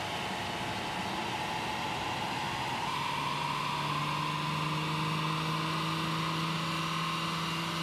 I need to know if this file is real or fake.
real